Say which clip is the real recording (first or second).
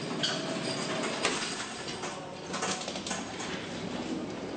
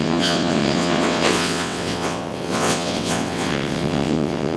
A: first